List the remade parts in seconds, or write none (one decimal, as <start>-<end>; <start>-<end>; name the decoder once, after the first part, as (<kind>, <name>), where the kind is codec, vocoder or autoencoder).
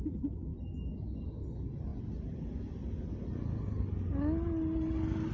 none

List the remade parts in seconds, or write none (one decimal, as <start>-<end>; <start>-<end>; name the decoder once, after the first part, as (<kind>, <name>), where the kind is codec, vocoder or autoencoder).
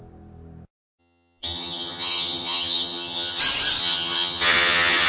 1.0-3.4 (vocoder, HiFi-GAN); 3.8-5.1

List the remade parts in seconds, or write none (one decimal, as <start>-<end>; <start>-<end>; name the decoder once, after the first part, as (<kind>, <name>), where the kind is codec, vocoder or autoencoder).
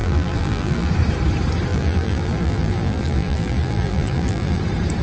0.0-0.9 (vocoder, BigVGAN v2); 1.7-4.6